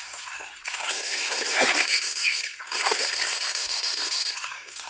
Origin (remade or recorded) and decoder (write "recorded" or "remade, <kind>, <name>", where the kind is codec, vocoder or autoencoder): remade, codec, SNAC